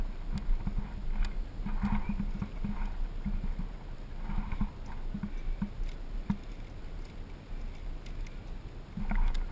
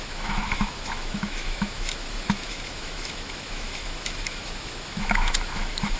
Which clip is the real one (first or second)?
first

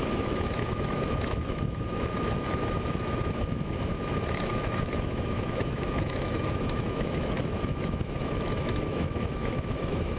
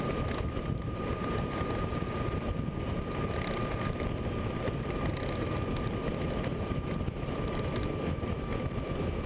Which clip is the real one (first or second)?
second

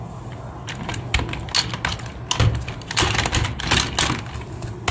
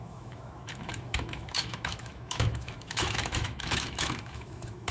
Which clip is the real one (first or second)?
first